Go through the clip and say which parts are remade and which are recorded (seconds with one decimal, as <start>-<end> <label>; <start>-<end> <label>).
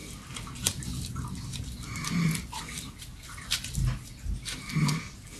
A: 0.0-5.4 recorded